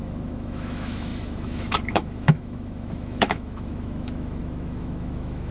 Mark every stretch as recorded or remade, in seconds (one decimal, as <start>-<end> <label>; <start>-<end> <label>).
0.0-5.5 remade